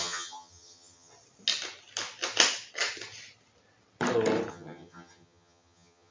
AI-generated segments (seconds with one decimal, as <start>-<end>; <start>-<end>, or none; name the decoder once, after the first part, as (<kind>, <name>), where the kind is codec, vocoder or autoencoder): 0.0-1.1 (vocoder, HiFi-GAN); 4.5-6.1